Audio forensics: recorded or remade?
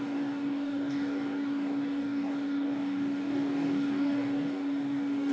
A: remade